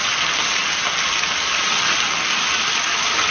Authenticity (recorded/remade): recorded